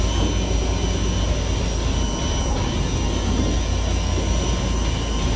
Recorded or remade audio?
recorded